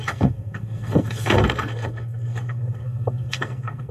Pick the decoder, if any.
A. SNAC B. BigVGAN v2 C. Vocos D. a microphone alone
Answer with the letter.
A